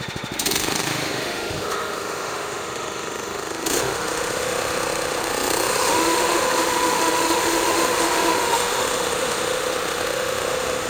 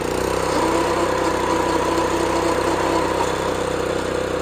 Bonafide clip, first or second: second